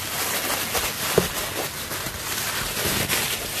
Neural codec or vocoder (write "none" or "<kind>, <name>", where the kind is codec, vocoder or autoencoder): none